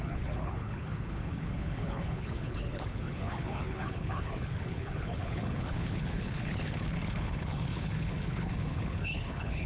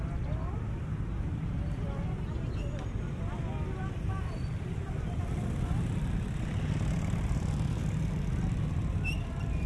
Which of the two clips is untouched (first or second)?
second